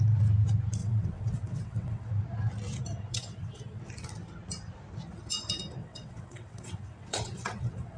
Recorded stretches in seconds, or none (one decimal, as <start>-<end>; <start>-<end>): 0.0-0.8; 2.1-3.1; 3.8-5.8